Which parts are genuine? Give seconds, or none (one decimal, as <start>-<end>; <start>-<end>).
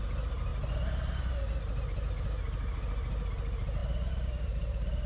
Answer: 0.0-5.1